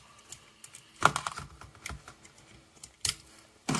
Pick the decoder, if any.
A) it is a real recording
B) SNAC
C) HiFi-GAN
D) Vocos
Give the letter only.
A